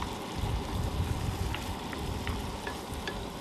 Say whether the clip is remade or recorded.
recorded